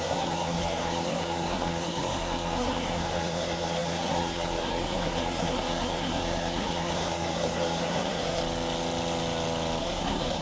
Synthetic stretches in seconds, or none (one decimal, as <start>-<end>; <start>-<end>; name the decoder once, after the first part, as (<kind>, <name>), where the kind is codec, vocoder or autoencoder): 0.0-8.4 (codec, SNAC); 9.8-10.4